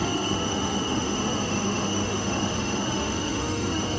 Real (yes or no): no